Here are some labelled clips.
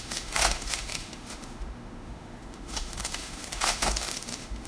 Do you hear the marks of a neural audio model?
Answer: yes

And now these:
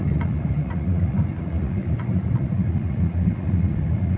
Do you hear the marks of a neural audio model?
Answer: yes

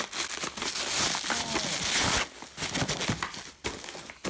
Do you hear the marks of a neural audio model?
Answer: no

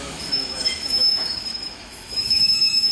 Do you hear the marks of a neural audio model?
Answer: yes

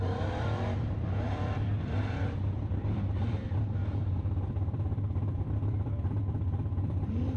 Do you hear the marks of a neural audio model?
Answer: yes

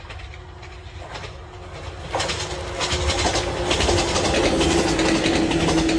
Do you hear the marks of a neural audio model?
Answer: no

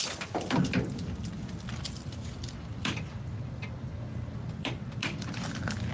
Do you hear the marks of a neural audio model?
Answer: no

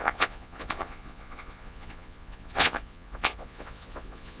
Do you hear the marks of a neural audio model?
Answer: yes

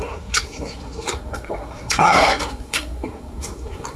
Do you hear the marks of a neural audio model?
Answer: yes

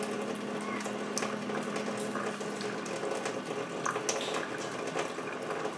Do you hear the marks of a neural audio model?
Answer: no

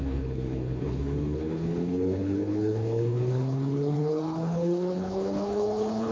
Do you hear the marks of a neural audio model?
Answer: yes